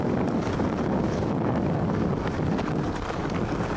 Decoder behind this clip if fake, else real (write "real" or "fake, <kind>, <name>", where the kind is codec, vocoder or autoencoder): fake, codec, DAC